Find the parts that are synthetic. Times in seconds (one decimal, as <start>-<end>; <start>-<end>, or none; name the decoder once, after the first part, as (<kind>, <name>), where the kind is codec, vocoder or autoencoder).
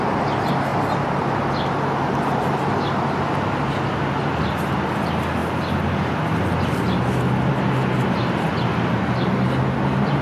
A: none